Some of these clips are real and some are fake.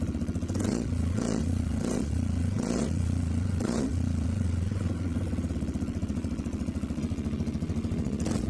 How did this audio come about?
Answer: fake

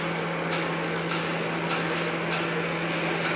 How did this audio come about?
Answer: real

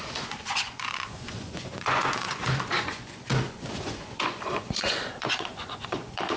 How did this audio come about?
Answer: fake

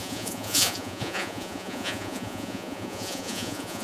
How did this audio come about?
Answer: fake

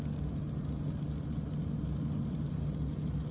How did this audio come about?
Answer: real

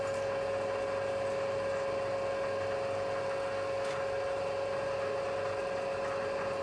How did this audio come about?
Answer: real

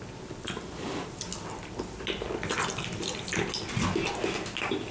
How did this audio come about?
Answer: real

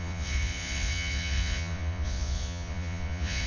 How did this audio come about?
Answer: fake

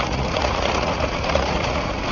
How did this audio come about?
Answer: fake